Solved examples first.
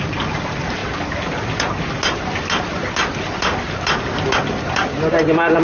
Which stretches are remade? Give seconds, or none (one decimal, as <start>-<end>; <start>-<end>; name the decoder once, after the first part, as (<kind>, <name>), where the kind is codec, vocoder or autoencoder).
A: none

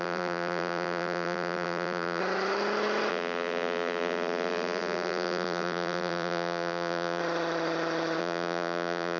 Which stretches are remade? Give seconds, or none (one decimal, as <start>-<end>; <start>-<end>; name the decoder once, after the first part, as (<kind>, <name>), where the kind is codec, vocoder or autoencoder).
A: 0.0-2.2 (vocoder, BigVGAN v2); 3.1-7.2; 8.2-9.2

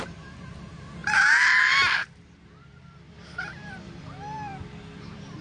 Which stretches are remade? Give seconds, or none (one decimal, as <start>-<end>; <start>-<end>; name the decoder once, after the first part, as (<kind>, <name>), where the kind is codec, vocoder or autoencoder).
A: 0.0-5.4 (vocoder, BigVGAN v2)

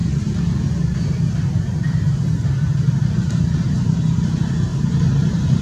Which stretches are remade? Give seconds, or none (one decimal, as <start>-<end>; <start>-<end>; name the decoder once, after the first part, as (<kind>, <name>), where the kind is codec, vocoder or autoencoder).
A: 4.7-5.6 (vocoder, BigVGAN v2)